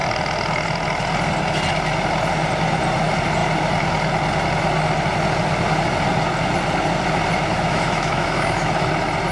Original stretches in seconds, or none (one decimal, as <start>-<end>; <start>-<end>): 0.0-7.5; 8.7-9.3